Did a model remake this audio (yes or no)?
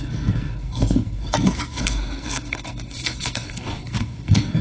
yes